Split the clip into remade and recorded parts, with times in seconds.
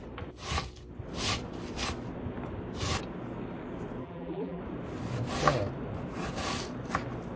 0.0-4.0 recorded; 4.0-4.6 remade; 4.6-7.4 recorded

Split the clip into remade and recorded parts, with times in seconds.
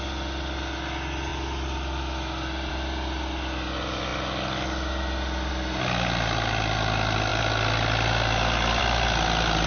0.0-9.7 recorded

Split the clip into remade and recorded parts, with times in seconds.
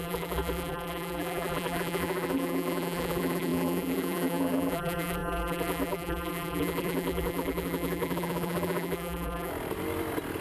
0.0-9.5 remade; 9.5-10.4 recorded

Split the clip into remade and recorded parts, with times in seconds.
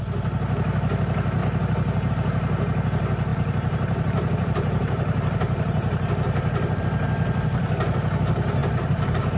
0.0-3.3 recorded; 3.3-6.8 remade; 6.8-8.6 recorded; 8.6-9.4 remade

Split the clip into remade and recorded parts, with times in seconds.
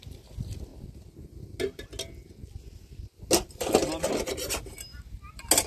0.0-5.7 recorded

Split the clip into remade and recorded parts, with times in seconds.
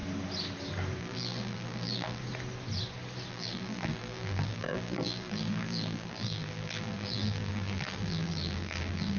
0.0-1.0 recorded; 1.0-2.2 remade; 2.2-3.3 recorded; 3.3-9.2 remade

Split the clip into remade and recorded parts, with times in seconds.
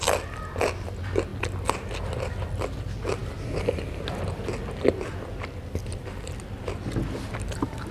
0.0-7.9 recorded